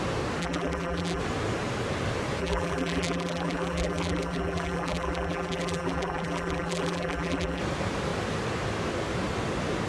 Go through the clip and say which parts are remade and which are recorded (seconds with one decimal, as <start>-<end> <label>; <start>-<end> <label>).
0.0-0.4 recorded; 0.4-1.2 remade; 1.2-2.4 recorded; 2.4-7.6 remade; 7.6-9.9 recorded